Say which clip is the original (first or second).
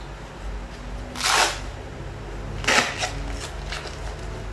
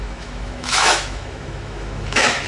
first